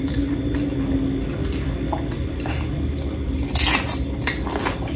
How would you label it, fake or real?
real